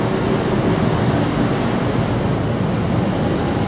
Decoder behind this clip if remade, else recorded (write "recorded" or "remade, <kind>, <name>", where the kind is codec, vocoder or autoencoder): recorded